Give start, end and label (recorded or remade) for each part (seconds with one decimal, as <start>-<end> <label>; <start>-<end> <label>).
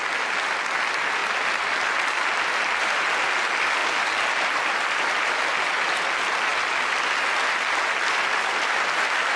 0.0-9.4 recorded